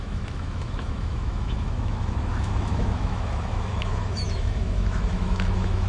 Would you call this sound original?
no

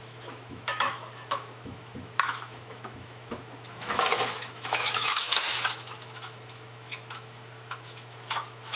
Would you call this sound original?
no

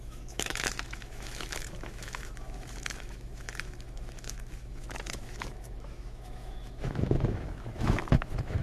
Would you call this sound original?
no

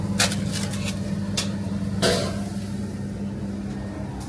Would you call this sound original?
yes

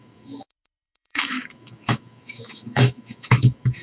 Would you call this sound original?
no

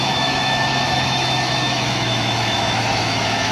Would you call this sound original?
no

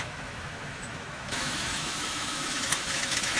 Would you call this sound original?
no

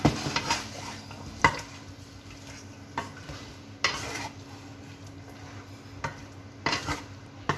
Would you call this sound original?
yes